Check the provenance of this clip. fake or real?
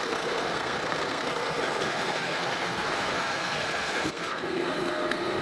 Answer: fake